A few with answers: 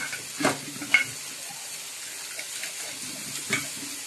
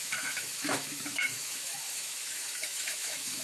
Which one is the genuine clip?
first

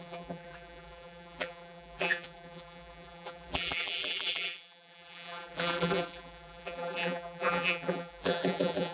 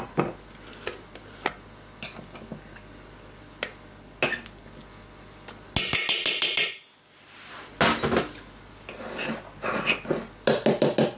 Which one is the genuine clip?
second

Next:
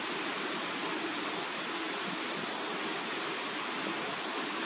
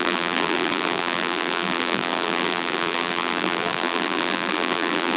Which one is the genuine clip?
first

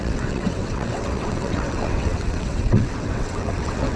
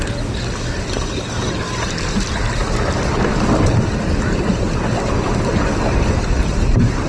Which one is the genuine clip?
second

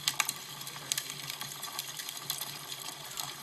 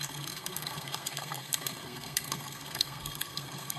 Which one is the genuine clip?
first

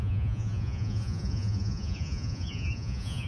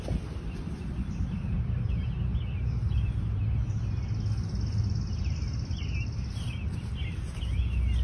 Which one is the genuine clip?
second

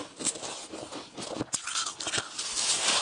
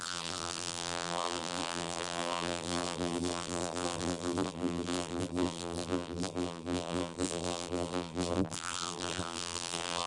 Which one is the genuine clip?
first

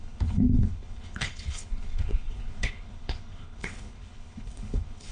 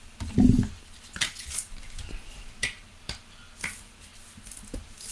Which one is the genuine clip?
second